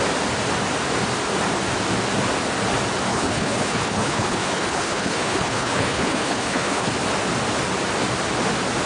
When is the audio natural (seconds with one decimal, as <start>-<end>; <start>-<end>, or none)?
0.0-3.1; 6.9-8.9